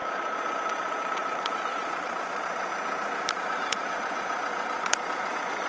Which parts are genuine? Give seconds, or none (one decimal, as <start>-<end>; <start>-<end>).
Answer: 2.7-3.3

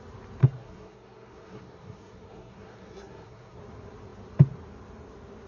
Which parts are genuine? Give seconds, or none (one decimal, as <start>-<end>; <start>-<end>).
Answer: 0.0-0.4; 3.6-5.5

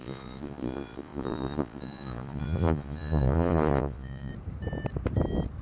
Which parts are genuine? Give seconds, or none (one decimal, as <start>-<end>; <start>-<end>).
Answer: 4.3-5.6

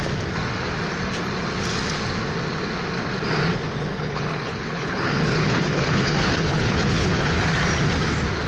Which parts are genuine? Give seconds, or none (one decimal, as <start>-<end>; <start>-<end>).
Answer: 0.0-3.9; 7.4-8.5

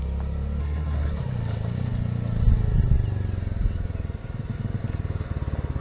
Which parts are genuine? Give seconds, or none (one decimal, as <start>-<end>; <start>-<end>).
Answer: 0.0-0.6; 1.1-5.8

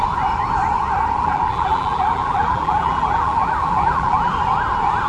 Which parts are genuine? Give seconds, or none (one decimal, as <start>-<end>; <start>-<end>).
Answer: 0.0-1.2; 4.3-5.1